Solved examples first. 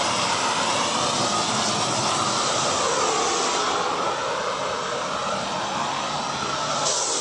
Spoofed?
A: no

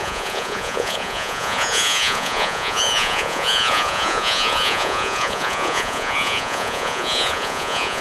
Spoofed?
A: yes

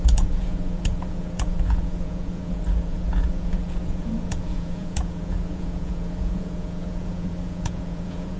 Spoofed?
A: yes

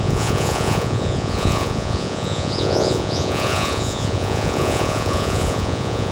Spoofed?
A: yes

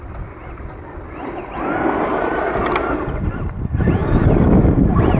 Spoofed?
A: no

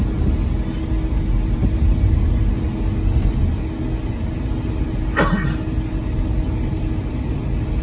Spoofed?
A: no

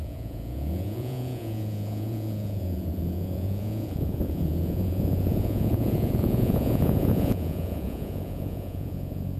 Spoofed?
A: yes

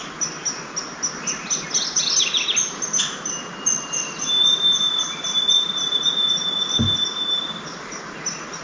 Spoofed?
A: no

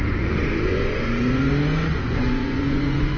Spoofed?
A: yes